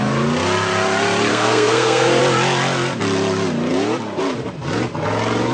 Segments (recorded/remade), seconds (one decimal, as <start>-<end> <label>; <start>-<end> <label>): 0.0-1.3 recorded; 1.3-2.2 remade; 2.2-5.5 recorded